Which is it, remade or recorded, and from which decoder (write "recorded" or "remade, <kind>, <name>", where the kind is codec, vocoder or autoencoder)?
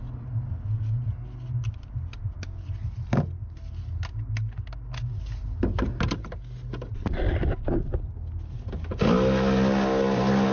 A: recorded